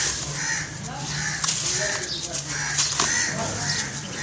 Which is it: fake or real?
real